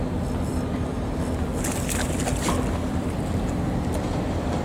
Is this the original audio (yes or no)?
yes